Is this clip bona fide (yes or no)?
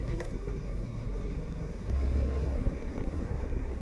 no